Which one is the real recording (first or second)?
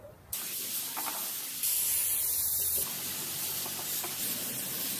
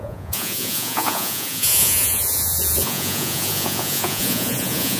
first